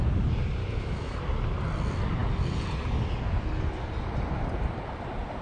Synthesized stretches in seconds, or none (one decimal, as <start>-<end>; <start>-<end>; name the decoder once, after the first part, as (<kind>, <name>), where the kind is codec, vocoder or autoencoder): 0.6-1.2 (autoencoder, DAC-VAE)